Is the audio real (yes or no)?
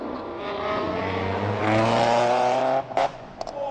no